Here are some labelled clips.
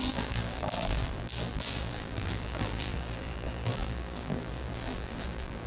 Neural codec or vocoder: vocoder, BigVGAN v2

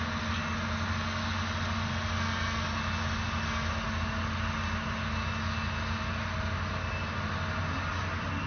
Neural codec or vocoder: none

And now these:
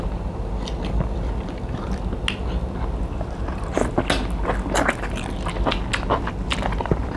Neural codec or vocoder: none